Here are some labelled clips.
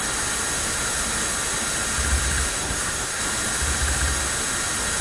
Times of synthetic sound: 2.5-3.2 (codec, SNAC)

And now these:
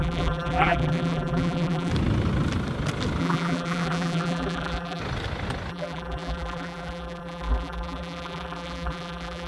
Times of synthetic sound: 0.0-1.9 (vocoder, BigVGAN v2); 3.2-5.0; 5.7-9.5